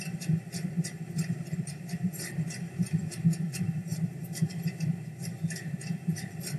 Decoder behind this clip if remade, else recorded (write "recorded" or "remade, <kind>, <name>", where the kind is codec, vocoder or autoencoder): remade, vocoder, BigVGAN v2